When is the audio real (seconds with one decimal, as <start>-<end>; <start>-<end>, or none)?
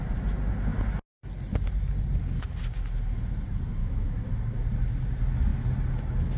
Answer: 0.0-3.8; 4.3-6.4